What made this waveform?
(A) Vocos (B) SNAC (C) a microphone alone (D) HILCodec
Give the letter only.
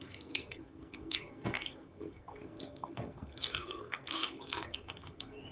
B